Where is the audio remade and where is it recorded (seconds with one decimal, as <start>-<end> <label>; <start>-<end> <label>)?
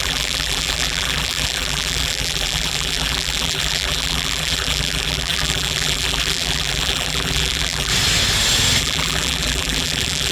0.0-7.9 remade; 7.9-8.8 recorded; 8.8-10.3 remade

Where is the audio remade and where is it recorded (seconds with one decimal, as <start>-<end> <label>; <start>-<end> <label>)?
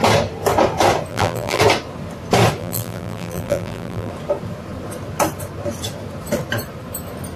0.0-1.1 recorded; 1.1-1.6 remade; 1.6-2.6 recorded; 2.6-4.1 remade; 4.1-7.4 recorded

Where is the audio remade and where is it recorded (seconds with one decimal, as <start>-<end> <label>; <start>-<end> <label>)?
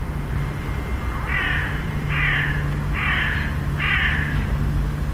0.0-1.6 recorded; 1.6-2.5 remade; 2.5-5.1 recorded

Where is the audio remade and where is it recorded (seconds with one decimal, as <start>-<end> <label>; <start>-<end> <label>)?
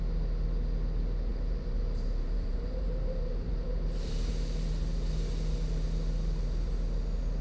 0.0-1.3 recorded; 1.3-4.3 remade; 4.3-7.4 recorded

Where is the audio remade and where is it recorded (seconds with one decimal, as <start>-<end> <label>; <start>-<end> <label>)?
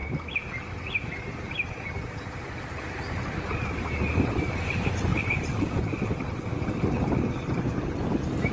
0.0-5.1 recorded; 5.1-6.4 remade; 6.4-8.5 recorded